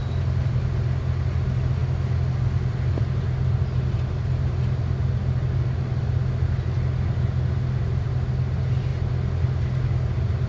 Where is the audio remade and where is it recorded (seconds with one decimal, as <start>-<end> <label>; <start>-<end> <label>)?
0.0-10.5 recorded